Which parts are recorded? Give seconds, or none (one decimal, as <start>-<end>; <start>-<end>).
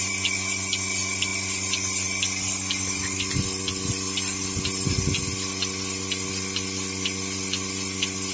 0.0-8.3